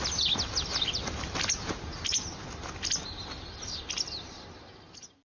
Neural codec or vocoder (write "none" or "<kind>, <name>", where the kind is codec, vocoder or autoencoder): none